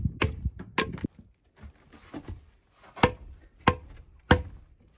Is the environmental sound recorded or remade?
recorded